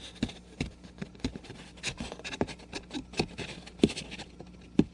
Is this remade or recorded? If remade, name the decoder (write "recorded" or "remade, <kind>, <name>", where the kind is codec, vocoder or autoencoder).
recorded